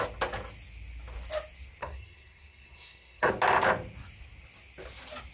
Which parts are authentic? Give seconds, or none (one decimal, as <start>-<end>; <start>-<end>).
0.0-1.8; 3.3-5.3